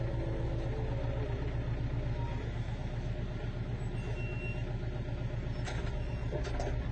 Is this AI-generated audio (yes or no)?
no